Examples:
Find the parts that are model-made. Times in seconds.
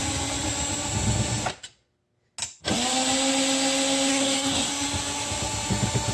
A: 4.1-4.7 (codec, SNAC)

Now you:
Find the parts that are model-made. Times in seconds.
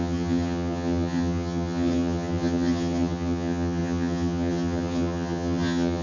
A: 0.0-6.0 (vocoder, HiFi-GAN)